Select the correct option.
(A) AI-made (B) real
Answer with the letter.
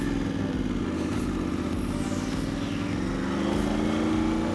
B